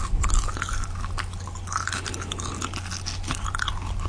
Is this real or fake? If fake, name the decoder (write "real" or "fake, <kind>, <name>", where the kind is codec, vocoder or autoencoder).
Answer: real